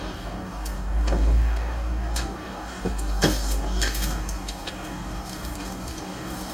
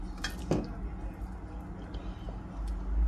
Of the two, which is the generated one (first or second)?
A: first